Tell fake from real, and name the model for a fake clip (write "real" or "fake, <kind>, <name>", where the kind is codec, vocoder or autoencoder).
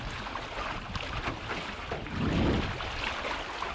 real